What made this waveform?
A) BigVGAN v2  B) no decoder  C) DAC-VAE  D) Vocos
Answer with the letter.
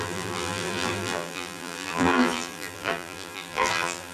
A